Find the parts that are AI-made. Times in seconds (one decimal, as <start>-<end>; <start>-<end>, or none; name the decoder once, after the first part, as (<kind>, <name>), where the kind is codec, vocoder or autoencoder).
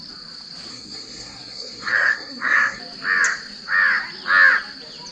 0.7-2.8 (codec, SNAC)